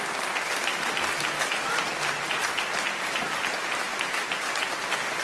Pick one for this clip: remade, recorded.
remade